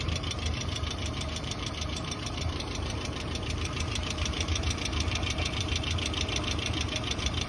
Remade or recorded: remade